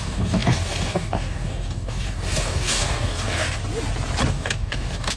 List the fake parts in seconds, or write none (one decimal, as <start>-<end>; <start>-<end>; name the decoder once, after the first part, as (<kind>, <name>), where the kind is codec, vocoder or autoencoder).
0.0-3.6 (codec, DAC); 4.3-5.2